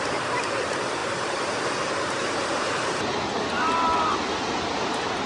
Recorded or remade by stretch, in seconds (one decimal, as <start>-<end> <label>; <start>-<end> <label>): 0.0-3.1 remade; 3.1-4.5 recorded; 4.5-5.3 remade